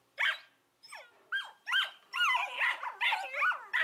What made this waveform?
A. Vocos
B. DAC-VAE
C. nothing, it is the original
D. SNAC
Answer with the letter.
C